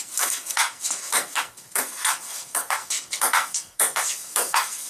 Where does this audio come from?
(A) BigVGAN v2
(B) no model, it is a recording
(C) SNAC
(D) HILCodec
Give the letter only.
C